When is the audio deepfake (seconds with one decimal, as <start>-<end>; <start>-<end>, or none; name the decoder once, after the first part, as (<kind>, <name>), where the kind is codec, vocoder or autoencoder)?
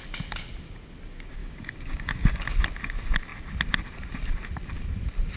1.4-2.4 (codec, DAC)